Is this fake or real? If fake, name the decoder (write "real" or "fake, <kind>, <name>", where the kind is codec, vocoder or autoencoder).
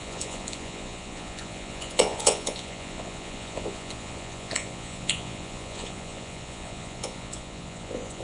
fake, vocoder, Vocos